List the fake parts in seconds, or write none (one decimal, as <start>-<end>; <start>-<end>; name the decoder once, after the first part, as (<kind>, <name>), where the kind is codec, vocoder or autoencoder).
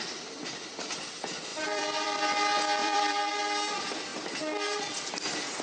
1.5-2.2 (vocoder, BigVGAN v2); 2.8-3.3